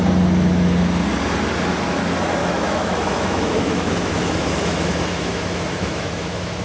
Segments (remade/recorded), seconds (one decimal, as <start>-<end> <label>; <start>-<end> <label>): 0.0-2.4 recorded; 2.4-6.6 remade